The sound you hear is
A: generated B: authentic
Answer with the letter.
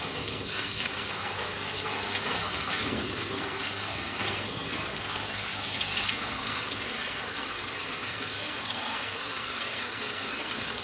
A